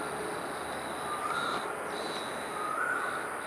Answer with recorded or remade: recorded